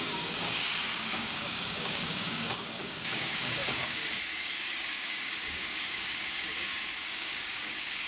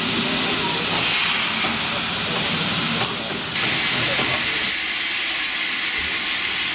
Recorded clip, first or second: second